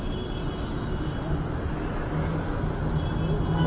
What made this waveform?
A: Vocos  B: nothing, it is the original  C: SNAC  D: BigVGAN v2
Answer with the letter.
D